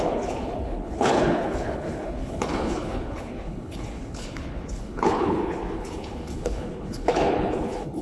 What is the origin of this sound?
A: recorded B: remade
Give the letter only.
B